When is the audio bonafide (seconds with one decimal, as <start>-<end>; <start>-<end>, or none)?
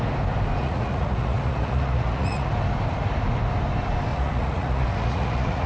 0.0-0.6; 2.5-4.1